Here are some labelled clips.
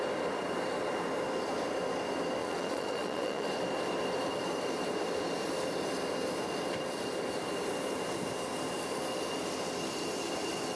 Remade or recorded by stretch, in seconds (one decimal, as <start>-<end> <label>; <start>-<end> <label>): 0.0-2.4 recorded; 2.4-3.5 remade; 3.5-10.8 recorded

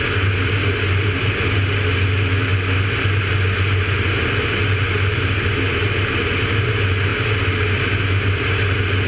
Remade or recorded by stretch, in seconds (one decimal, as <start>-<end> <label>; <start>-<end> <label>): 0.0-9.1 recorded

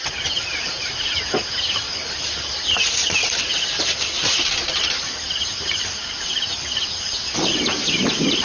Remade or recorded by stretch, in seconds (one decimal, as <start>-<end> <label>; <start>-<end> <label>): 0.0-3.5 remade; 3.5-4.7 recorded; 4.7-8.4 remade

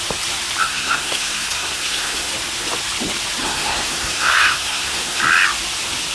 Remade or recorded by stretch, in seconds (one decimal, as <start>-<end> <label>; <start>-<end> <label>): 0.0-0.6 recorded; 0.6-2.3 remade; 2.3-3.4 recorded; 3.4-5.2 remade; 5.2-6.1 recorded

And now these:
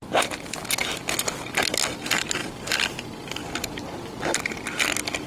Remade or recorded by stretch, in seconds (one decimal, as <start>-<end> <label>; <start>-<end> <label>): 0.0-5.3 recorded